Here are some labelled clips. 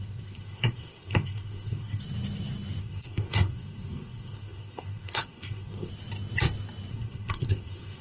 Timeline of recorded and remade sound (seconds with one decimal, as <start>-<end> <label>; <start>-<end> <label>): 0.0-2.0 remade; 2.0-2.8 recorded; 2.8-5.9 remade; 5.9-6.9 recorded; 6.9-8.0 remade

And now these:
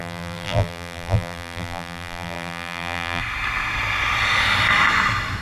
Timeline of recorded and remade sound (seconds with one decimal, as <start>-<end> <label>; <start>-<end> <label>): 0.0-3.2 remade; 3.2-5.4 recorded

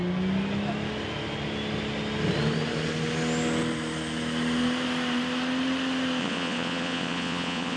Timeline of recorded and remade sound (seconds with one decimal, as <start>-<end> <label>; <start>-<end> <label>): 0.0-6.2 recorded; 6.2-7.8 remade

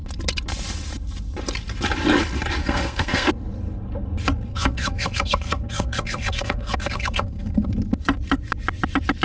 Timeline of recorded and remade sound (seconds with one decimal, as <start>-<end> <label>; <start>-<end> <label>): 0.0-2.6 recorded; 2.6-3.3 remade; 3.3-4.5 recorded; 4.5-7.7 remade; 7.7-9.2 recorded

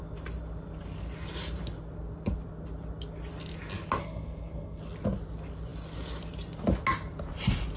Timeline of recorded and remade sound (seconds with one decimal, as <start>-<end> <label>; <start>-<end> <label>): 0.0-4.0 recorded; 4.0-4.8 remade; 4.8-7.8 recorded